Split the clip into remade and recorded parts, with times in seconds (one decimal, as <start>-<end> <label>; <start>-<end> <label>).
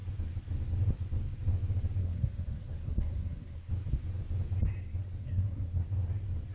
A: 0.0-2.0 recorded; 2.0-3.7 remade; 3.7-5.2 recorded; 5.2-5.8 remade; 5.8-6.5 recorded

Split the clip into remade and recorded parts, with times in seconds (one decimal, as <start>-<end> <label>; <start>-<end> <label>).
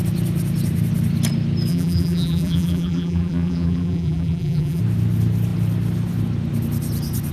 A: 0.0-1.7 recorded; 1.7-4.8 remade; 4.8-7.3 recorded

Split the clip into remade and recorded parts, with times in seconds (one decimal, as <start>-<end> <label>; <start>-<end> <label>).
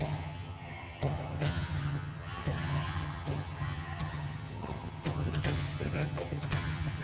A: 0.0-7.0 remade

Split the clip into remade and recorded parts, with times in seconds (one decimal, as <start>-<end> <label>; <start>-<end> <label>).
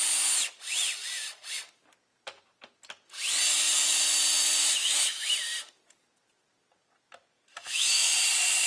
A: 0.0-4.8 recorded; 4.8-5.3 remade; 5.3-7.5 recorded; 7.5-8.1 remade; 8.1-8.7 recorded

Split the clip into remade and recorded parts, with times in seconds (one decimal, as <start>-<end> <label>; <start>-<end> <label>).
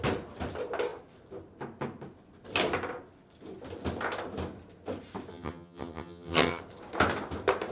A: 0.0-5.3 recorded; 5.3-6.6 remade; 6.6-7.7 recorded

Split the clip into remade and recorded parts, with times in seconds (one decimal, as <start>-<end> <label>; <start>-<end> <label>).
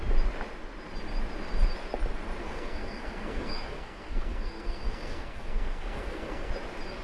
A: 0.0-2.4 recorded; 2.4-6.5 remade; 6.5-7.0 recorded